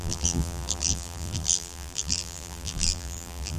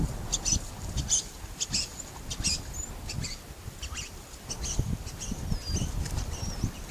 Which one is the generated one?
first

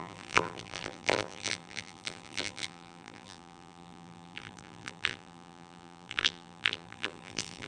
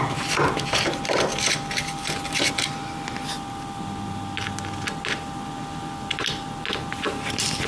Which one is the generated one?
first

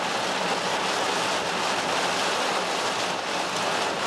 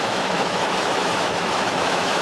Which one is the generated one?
second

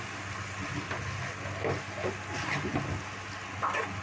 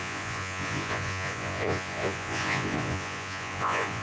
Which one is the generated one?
second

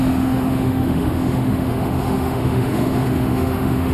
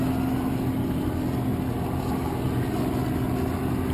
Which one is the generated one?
first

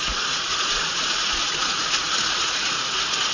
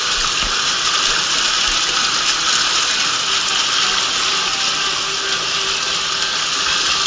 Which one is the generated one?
first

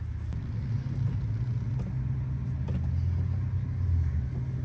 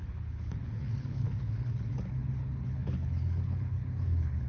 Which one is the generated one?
second